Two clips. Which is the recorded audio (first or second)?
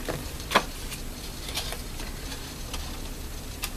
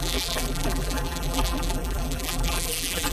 first